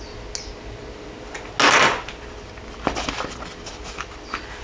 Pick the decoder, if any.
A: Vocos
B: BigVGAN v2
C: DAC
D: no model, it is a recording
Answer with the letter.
D